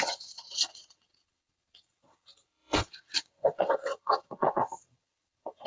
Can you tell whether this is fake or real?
fake